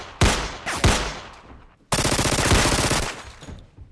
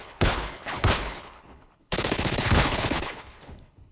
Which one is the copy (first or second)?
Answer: second